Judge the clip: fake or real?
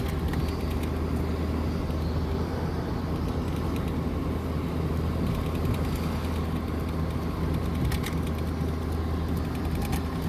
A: real